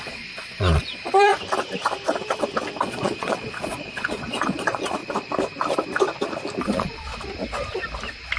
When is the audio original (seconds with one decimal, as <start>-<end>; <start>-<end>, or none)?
1.3-2.8; 5.0-6.6; 7.1-8.4